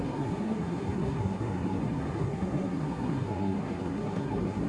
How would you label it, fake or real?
fake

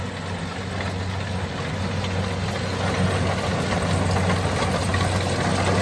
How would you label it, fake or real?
real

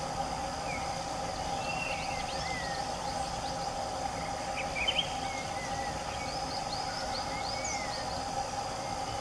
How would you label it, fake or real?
real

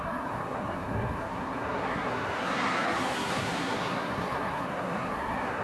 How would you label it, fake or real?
fake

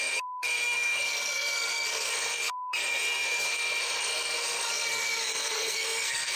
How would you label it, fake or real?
fake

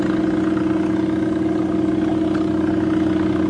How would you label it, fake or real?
real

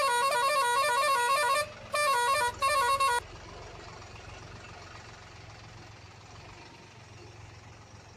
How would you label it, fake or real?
real